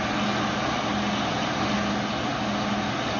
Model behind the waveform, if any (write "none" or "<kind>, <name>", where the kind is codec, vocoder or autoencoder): none